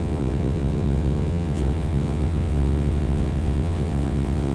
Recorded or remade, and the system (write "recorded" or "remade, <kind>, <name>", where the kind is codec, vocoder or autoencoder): remade, vocoder, WaveNeXt